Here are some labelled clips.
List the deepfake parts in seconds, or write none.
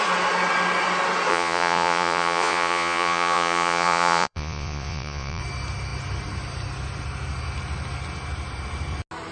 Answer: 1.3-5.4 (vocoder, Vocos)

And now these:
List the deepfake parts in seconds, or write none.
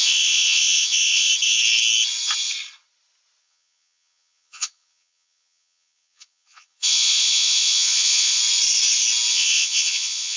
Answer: 0.0-1.3 (vocoder, Vocos); 3.4-8.4; 9.3-10.4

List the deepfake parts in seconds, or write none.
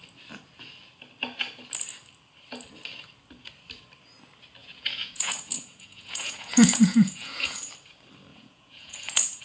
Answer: 4.6-7.7 (vocoder, Vocos); 8.3-9.4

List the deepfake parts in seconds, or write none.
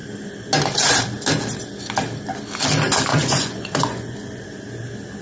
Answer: 3.1-4.4 (vocoder, Vocos)